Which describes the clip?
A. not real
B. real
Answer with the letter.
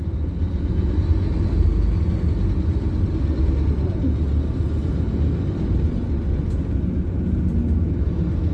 B